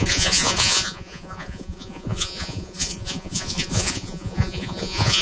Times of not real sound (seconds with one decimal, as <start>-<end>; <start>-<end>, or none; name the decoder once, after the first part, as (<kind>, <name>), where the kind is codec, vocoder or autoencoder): 0.0-5.2 (vocoder, Vocos)